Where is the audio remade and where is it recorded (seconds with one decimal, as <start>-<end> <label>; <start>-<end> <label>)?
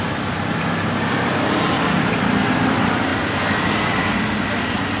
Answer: 0.0-5.0 recorded